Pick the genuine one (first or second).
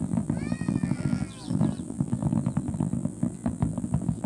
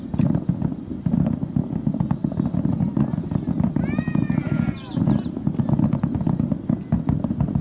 second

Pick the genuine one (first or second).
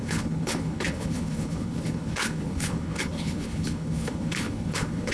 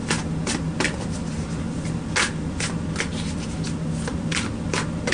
second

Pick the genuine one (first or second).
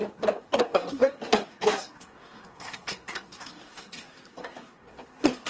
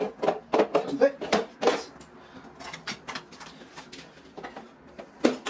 second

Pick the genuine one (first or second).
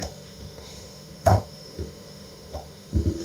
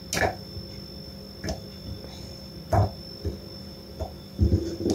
second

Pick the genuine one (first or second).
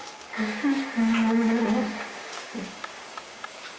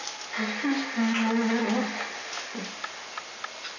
second